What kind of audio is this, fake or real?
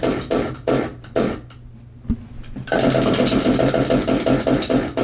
real